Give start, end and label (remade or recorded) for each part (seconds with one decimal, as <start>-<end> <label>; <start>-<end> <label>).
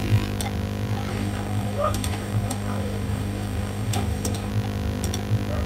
0.0-1.1 recorded; 1.1-4.5 remade; 4.5-5.7 recorded